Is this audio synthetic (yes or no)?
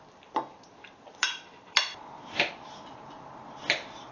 yes